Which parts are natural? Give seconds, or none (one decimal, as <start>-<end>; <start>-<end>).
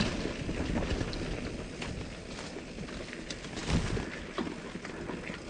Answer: 0.0-5.5